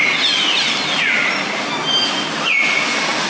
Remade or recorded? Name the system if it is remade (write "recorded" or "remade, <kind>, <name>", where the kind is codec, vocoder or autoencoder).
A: recorded